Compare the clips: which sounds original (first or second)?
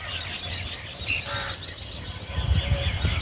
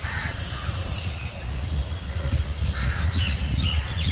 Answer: first